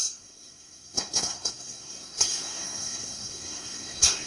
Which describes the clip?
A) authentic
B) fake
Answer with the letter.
B